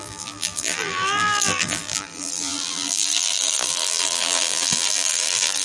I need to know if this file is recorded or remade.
remade